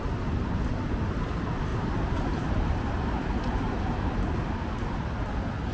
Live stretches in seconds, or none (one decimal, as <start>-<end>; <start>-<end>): 0.0-1.7; 4.2-5.7